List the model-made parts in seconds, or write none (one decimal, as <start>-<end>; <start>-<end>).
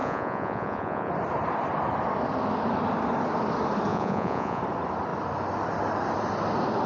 0.0-1.1; 3.9-4.6